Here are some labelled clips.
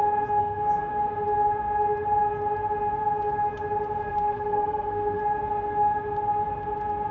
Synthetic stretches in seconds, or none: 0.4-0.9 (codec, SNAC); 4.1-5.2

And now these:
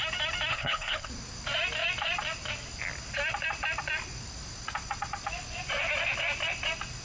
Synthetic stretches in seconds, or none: 0.5-1.1 (codec, HILCodec)

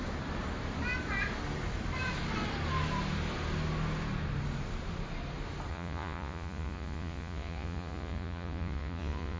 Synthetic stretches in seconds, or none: 5.7-9.4 (vocoder, Vocos)

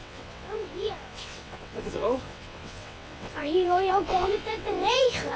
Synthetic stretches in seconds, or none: 0.0-5.4 (vocoder, WaveNeXt)

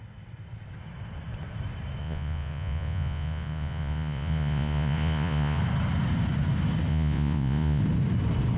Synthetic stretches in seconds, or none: 2.0-5.6 (vocoder, Vocos); 6.9-7.8

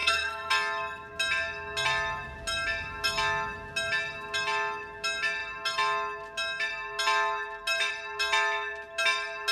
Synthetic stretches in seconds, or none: 0.0-0.5 (codec, SNAC)